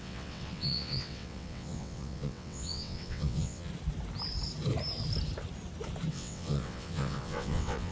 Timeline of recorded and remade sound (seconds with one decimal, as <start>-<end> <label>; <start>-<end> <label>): 0.0-3.7 remade; 3.7-6.1 recorded; 6.1-7.9 remade